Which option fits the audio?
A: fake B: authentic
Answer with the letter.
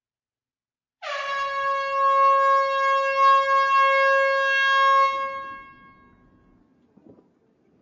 B